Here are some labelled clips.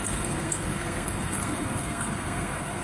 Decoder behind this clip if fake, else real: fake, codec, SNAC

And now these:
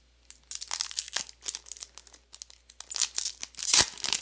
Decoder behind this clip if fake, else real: real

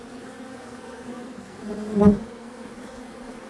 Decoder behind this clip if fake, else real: fake, codec, SNAC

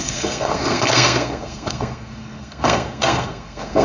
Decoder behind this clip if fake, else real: fake, codec, SNAC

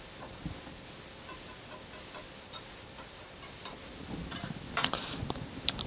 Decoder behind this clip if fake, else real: real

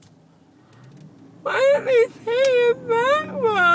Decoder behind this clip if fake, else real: real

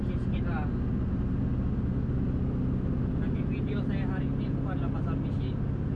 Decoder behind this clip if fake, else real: real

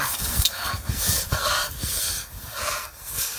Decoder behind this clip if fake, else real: fake, codec, SNAC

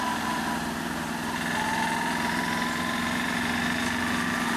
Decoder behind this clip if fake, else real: real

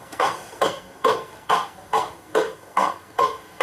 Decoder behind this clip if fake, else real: fake, codec, SNAC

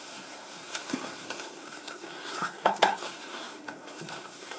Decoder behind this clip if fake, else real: fake, codec, SNAC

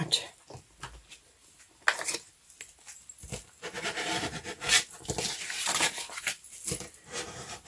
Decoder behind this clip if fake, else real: real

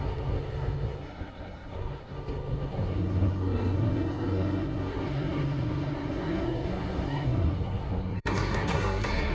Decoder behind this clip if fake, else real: fake, codec, SNAC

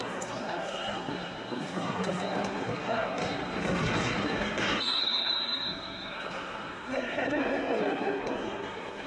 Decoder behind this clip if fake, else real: fake, codec, SNAC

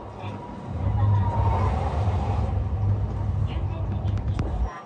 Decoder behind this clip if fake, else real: real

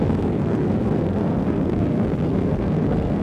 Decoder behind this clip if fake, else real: fake, codec, SNAC